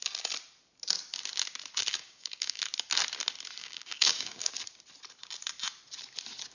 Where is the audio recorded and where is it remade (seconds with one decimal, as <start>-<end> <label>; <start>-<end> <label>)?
0.0-1.9 recorded; 1.9-2.6 remade; 2.6-3.6 recorded; 3.6-4.5 remade; 4.5-6.5 recorded